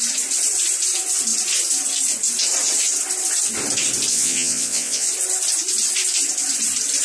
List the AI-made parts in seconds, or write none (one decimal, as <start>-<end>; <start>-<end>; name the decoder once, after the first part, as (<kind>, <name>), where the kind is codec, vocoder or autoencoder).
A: 4.1-5.1 (vocoder, Vocos)